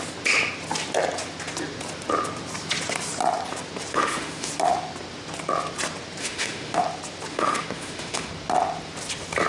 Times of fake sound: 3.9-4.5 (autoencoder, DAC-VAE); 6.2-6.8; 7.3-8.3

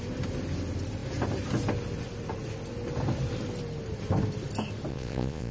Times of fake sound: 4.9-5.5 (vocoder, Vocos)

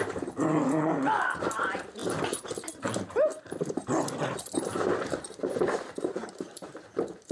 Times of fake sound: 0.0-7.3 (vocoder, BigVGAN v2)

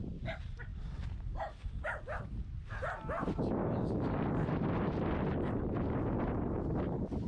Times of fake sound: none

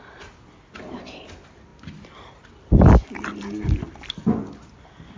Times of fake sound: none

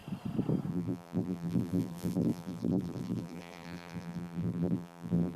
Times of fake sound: 0.7-5.4 (vocoder, BigVGAN v2)